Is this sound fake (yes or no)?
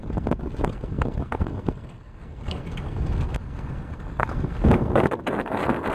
yes